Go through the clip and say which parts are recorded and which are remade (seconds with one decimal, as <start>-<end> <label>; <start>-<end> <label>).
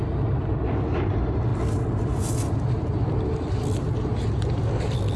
0.0-5.2 recorded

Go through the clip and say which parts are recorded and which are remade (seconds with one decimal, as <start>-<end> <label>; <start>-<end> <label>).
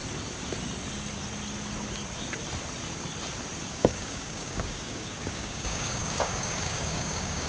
0.0-3.7 recorded; 3.7-7.5 remade